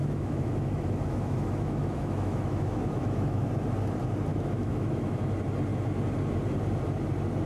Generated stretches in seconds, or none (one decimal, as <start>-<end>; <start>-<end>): 0.0-3.5; 4.3-5.1